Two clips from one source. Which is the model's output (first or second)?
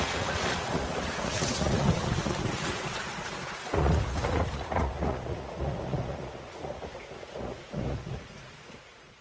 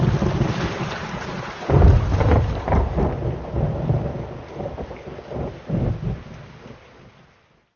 first